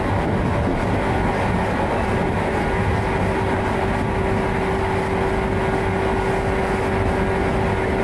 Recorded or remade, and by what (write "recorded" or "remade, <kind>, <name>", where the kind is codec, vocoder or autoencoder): recorded